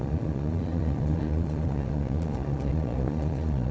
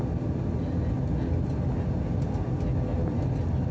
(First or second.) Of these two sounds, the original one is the second